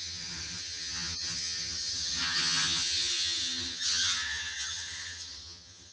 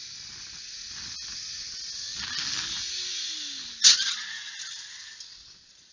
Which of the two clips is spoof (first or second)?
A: first